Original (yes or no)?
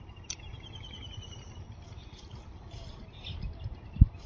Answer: yes